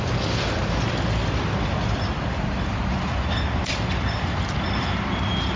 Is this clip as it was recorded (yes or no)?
yes